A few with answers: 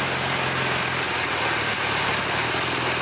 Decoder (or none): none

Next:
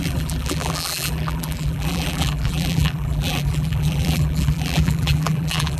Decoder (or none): vocoder, BigVGAN v2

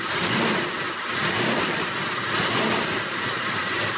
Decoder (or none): none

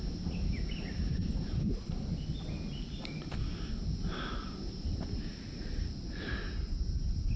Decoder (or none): none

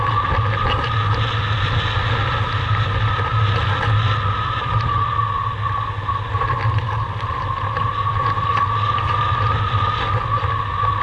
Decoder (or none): none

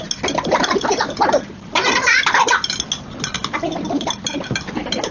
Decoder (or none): none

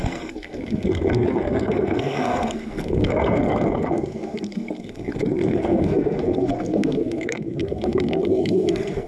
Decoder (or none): codec, SNAC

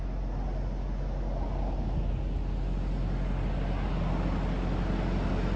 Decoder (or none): none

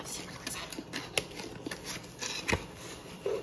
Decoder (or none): none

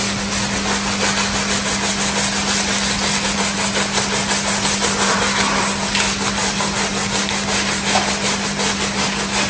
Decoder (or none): none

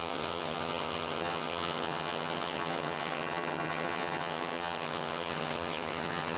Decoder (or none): vocoder, HiFi-GAN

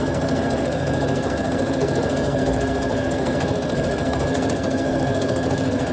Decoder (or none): codec, SNAC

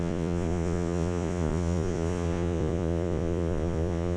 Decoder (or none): vocoder, Vocos